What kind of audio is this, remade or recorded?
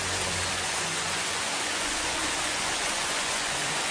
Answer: remade